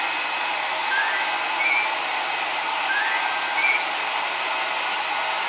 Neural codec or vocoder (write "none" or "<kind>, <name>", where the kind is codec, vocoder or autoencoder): none